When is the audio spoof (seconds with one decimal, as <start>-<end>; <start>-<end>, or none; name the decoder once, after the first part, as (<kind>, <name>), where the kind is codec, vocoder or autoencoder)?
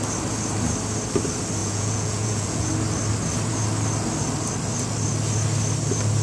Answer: 1.6-2.7 (vocoder, Vocos)